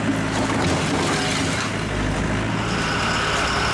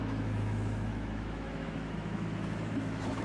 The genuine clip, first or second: first